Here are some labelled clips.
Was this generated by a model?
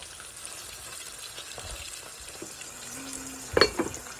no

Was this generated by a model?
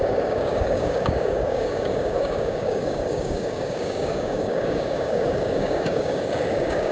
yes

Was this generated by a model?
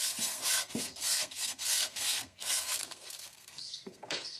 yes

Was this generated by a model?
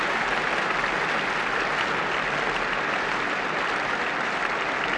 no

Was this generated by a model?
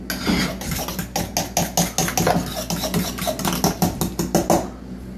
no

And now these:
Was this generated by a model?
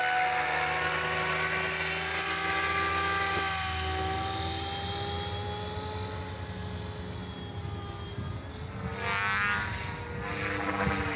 no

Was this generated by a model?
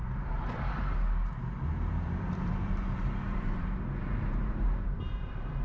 yes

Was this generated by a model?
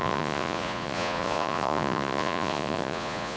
yes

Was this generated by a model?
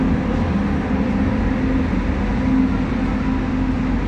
no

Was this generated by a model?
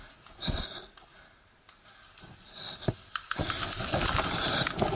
no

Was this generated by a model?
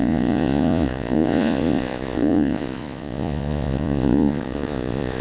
yes